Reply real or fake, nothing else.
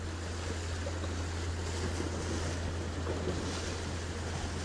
real